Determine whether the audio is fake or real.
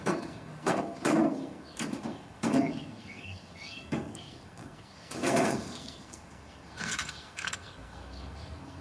fake